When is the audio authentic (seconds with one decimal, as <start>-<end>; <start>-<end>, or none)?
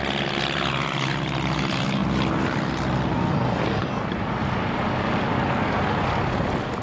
0.0-6.8